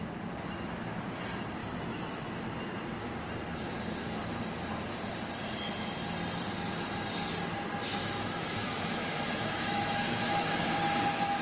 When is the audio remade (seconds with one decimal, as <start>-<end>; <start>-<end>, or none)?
1.6-2.3; 8.0-10.6